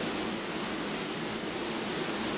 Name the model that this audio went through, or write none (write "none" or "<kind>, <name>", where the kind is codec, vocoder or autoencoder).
none